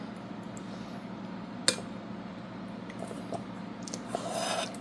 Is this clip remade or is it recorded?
recorded